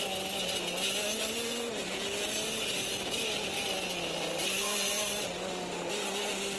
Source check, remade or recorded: recorded